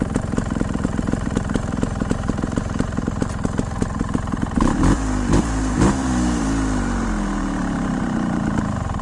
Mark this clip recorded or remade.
remade